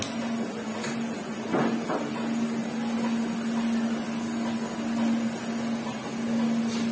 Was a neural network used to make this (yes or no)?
no